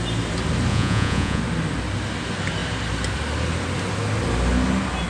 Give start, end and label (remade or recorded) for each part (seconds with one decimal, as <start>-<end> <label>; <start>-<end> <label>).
0.0-0.7 recorded; 0.7-1.4 remade; 1.4-5.1 recorded